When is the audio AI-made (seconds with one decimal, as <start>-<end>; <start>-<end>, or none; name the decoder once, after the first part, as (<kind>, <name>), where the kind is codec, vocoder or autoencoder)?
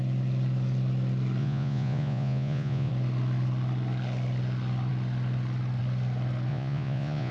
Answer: 1.4-2.9 (vocoder, Vocos); 6.5-7.3